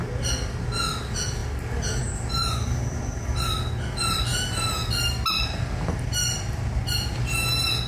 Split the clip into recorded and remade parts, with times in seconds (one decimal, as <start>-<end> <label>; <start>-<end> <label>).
0.0-7.9 recorded